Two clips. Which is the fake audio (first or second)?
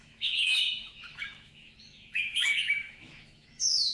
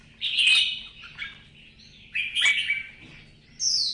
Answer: first